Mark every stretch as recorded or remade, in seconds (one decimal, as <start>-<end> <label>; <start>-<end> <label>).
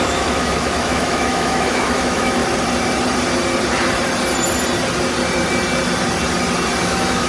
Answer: 0.0-2.4 remade; 2.4-6.8 recorded; 6.8-7.3 remade